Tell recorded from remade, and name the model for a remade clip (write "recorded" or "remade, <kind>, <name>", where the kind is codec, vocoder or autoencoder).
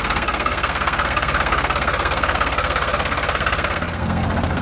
remade, codec, SNAC